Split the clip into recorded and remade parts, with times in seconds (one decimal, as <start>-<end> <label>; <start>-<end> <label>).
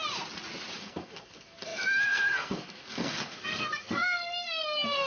0.0-0.8 recorded; 0.8-5.1 remade